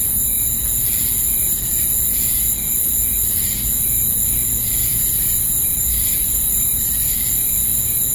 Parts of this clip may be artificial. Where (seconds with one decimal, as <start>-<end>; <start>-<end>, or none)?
4.8-7.1